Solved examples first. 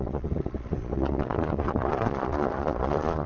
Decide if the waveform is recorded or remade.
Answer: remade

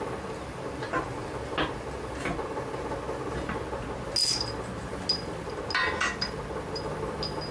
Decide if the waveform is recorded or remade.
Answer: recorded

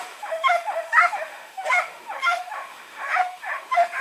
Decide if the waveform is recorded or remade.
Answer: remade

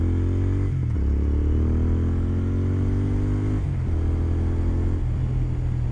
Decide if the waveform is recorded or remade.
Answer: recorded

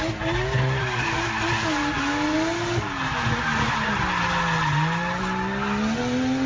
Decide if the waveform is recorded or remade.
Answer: recorded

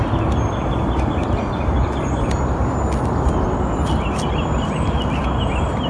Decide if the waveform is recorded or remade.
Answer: recorded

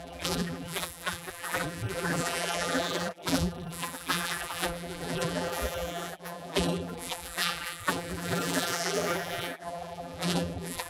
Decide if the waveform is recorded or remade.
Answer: remade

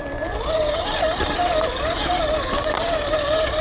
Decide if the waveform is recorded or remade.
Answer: recorded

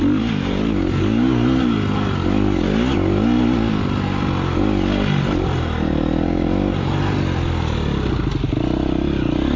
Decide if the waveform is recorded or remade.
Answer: recorded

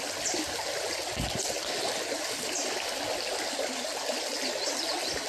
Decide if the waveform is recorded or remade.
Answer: recorded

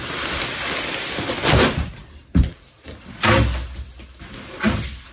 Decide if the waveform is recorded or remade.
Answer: recorded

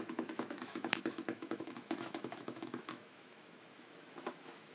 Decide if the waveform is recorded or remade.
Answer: remade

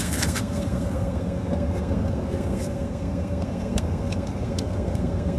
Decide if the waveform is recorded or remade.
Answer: remade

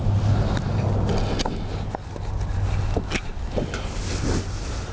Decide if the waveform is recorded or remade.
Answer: recorded